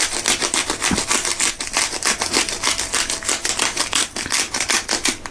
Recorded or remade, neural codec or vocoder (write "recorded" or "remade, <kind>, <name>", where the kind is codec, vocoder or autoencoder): recorded